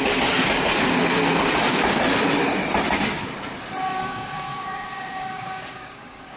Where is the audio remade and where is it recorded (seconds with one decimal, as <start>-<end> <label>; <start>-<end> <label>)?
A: 0.0-3.9 recorded; 3.9-6.4 remade